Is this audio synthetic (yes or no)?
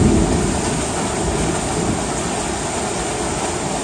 no